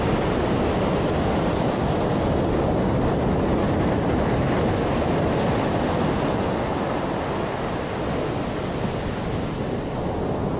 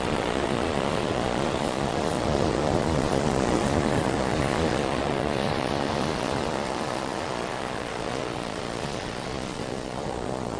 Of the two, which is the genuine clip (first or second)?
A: first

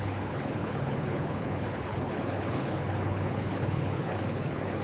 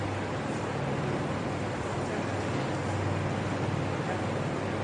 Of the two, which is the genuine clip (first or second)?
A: second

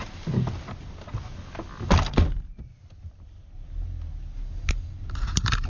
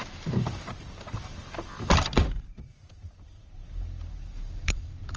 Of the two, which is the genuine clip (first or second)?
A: first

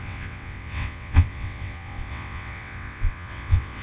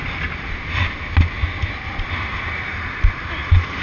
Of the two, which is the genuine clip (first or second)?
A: second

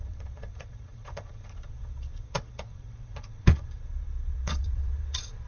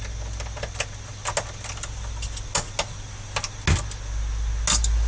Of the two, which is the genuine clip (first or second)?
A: second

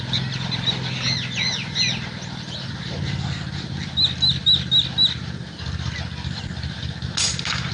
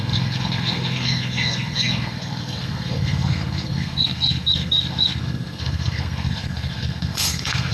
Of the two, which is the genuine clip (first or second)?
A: first